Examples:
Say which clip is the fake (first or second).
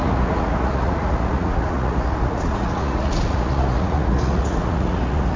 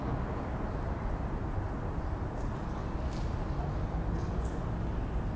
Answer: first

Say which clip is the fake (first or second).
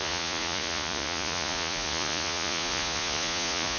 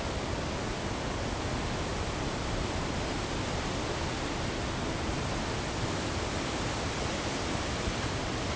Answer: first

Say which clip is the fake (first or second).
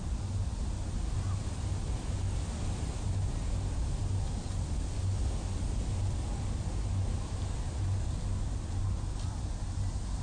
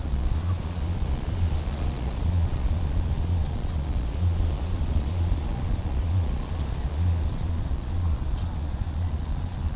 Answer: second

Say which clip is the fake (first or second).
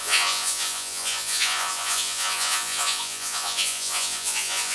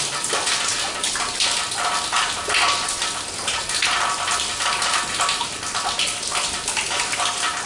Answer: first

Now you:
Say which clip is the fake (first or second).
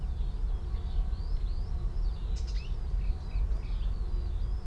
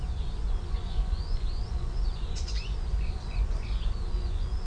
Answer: second